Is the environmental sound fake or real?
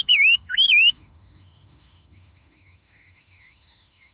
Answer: fake